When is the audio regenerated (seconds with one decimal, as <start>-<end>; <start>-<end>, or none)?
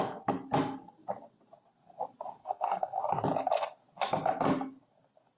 2.4-3.0